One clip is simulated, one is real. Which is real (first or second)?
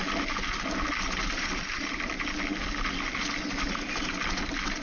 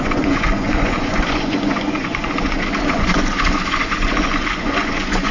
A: first